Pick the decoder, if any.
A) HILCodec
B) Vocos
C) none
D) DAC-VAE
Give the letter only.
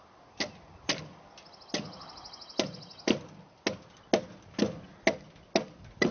C